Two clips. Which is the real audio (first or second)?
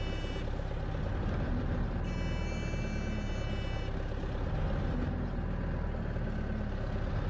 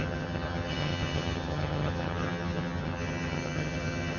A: first